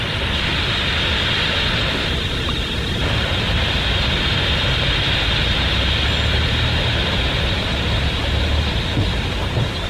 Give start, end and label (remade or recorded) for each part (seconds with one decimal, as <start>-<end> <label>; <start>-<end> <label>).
0.0-9.9 recorded